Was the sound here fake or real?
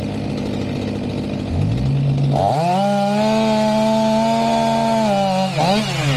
real